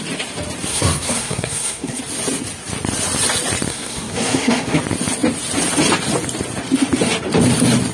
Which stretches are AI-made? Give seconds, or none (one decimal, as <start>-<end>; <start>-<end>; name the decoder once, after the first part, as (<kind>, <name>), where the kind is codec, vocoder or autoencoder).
0.7-2.0 (codec, SNAC); 3.7-4.8